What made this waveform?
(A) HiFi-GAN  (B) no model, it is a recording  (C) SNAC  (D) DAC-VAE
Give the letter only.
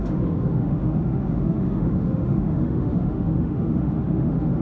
D